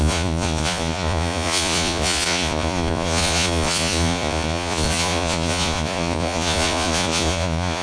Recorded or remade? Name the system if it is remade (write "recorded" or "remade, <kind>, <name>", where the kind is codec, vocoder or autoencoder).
remade, vocoder, Vocos